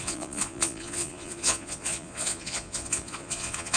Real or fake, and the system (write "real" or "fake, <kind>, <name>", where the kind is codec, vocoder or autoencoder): fake, vocoder, Vocos